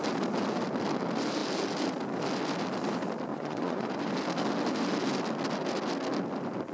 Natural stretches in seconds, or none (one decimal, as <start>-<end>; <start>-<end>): 0.0-3.3; 3.9-6.7